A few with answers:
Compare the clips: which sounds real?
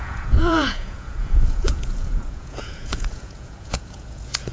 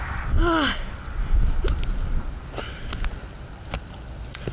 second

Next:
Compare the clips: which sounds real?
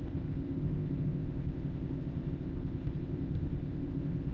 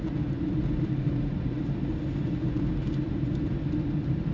second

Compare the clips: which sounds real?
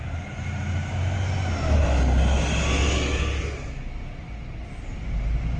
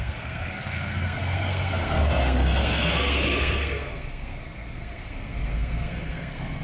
first